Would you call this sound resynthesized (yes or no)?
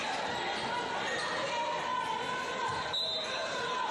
no